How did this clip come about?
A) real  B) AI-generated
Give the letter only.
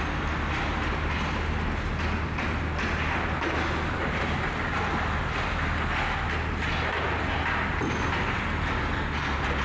A